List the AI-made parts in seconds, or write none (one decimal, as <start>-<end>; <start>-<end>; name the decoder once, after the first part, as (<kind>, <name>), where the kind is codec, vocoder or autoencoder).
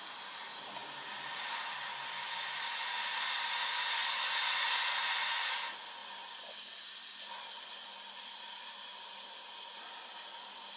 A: none